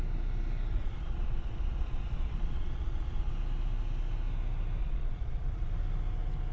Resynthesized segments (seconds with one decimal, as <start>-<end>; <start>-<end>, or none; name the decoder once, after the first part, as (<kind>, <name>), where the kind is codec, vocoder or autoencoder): 0.7-3.3 (vocoder, Vocos); 4.8-5.7